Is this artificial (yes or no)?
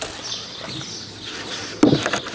no